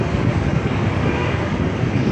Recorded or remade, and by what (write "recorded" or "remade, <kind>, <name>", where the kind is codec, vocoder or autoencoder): remade, codec, DAC